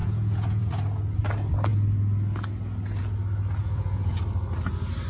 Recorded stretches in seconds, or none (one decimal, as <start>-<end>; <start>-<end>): 0.7-3.6; 4.2-5.1